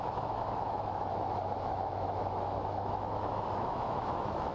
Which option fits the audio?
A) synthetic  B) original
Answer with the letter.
A